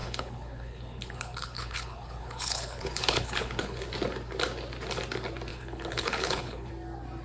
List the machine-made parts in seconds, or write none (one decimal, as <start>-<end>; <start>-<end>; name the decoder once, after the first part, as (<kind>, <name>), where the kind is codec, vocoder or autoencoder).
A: 0.0-3.8 (codec, HILCodec); 5.5-6.7